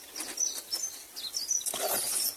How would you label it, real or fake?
real